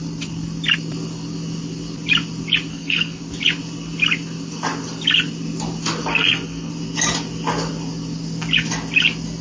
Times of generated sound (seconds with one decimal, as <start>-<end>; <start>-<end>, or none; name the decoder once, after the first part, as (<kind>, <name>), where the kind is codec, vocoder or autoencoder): 2.7-3.2 (codec, SNAC); 6.1-6.7